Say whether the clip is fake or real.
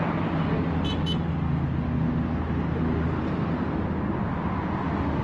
real